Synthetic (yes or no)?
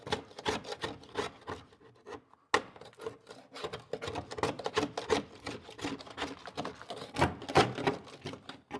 no